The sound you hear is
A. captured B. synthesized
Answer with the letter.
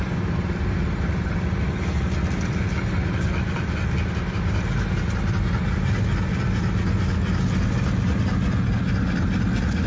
A